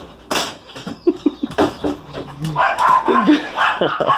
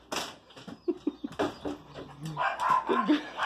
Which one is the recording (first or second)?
second